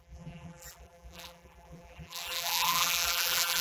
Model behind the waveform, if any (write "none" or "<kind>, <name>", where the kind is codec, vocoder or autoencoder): vocoder, BigVGAN v2